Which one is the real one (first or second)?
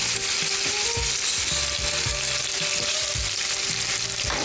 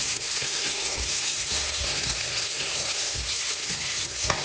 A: first